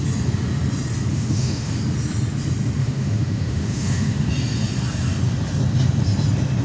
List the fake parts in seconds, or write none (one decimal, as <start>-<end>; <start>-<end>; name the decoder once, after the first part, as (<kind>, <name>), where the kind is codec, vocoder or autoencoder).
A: 1.1-1.7 (autoencoder, DAC-VAE); 2.8-4.3